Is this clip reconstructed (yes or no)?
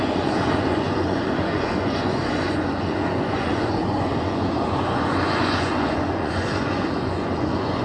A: yes